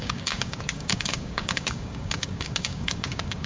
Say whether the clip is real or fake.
fake